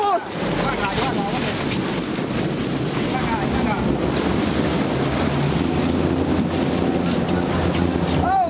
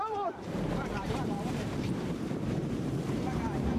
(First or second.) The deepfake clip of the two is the second